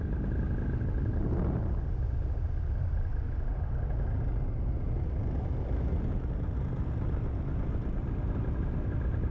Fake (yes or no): no